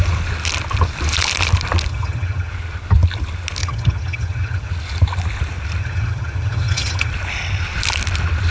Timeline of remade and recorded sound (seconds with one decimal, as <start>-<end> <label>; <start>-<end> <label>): 0.0-1.9 recorded; 1.9-2.5 remade; 2.5-3.6 recorded; 3.6-4.7 remade; 4.7-5.8 recorded; 5.8-7.1 remade; 7.1-8.5 recorded